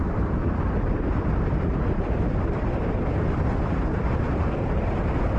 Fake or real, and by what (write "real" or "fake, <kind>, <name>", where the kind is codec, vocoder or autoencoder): real